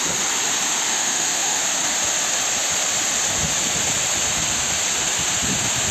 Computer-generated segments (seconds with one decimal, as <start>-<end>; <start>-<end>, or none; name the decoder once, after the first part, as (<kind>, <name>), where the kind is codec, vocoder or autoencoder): 0.9-1.6 (autoencoder, DAC-VAE)

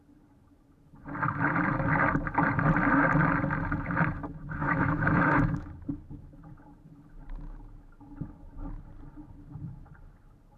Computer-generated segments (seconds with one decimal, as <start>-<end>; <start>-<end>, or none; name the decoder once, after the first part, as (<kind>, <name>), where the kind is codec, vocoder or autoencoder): 4.6-5.7 (autoencoder, DAC-VAE)